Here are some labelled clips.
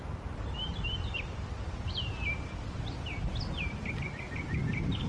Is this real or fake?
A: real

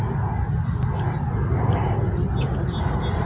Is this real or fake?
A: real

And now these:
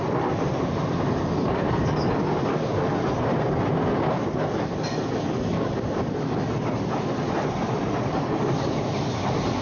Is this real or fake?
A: real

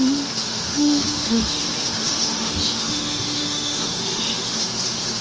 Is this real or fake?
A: fake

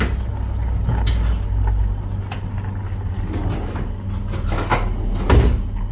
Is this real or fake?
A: real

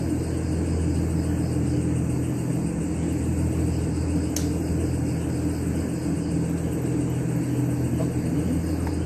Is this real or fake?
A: real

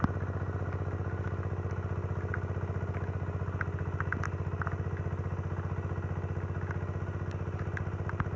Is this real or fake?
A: real